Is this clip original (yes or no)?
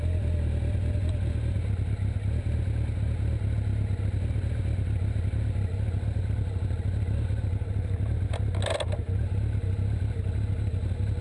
yes